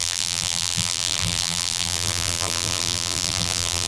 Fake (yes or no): yes